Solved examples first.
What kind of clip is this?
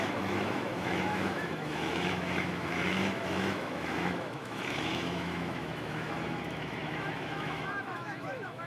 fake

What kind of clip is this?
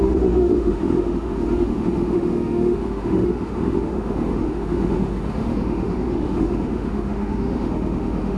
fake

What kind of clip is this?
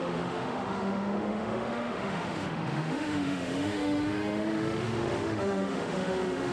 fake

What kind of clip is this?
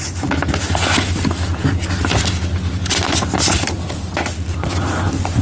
real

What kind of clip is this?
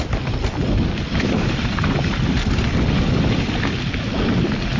real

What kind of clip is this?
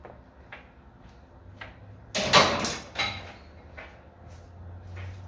real